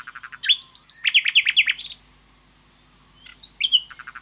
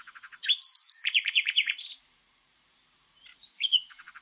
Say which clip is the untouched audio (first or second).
first